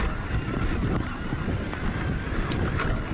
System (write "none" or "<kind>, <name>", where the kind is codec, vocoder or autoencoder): none